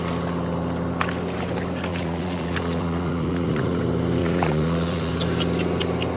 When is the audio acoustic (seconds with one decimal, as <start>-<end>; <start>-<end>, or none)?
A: 0.0-1.9; 3.8-4.2; 5.1-6.2